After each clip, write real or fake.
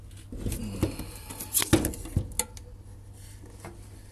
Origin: real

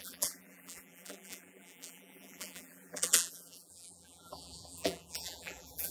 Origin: fake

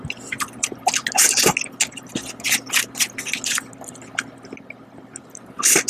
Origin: real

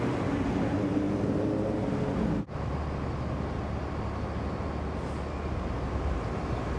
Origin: real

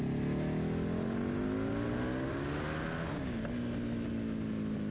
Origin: real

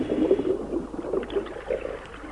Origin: real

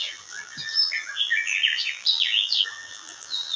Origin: fake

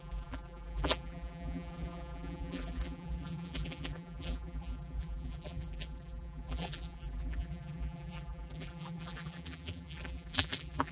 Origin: fake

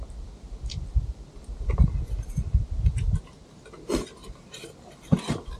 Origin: real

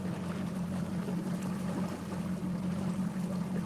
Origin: real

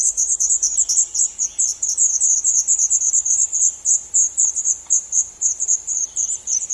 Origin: fake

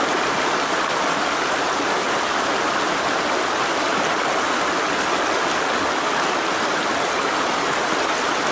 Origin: real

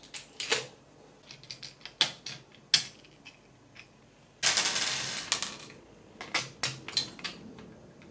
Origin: real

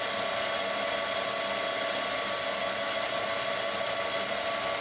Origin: real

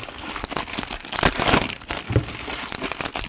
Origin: fake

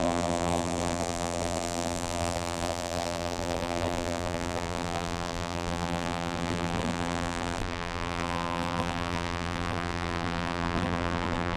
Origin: fake